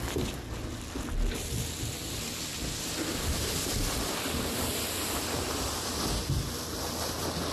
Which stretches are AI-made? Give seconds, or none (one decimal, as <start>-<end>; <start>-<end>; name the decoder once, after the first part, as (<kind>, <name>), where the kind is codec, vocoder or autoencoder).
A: 2.0-6.1 (vocoder, BigVGAN v2)